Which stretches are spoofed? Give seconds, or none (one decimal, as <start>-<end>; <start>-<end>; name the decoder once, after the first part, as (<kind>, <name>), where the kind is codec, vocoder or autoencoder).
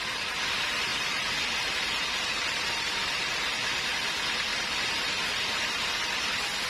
none